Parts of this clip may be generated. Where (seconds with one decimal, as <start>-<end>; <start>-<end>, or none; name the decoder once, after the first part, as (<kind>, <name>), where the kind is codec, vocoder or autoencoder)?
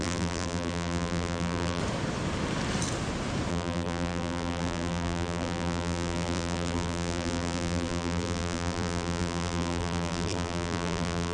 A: 0.0-1.8 (vocoder, BigVGAN v2); 3.5-11.3